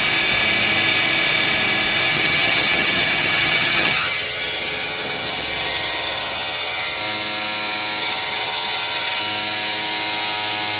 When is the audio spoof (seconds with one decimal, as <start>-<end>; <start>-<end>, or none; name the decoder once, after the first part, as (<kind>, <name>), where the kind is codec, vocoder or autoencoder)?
2.1-7.0 (vocoder, HiFi-GAN); 8.0-9.2